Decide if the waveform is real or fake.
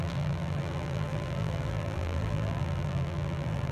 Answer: fake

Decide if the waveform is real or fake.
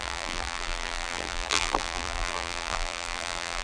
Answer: fake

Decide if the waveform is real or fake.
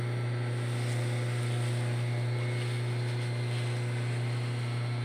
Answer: real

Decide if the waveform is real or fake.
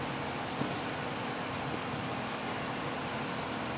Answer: real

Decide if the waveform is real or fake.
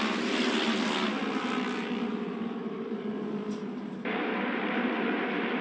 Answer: fake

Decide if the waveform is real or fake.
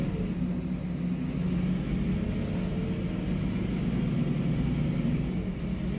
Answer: real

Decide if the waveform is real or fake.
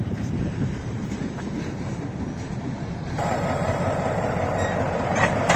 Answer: fake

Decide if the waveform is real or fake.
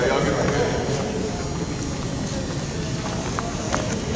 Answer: real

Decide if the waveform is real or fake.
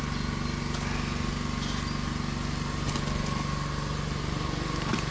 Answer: real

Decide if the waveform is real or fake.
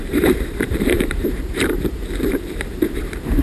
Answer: fake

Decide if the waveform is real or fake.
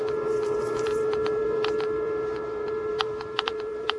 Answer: fake